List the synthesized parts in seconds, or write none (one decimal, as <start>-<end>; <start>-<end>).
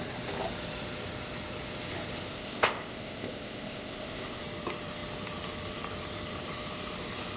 2.3-4.4